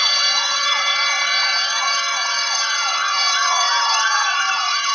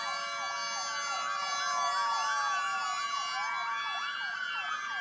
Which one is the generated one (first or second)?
first